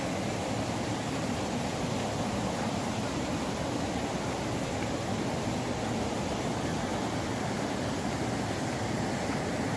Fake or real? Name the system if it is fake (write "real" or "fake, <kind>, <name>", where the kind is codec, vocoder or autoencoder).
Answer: real